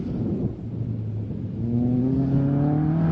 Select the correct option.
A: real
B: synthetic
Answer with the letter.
A